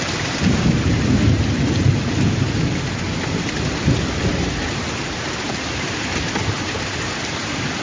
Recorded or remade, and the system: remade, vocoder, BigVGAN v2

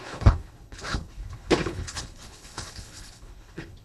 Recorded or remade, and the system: remade, codec, HILCodec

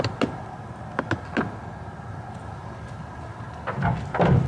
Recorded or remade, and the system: recorded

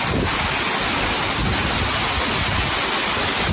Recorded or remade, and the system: recorded